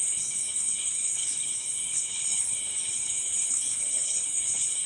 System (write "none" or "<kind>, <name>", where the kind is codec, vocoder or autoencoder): codec, HILCodec